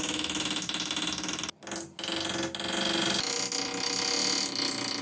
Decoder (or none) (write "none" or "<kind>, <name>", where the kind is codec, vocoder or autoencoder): none